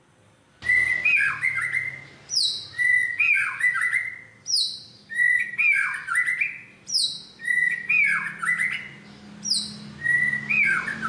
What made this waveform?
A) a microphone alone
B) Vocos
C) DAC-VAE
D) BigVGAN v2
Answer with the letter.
A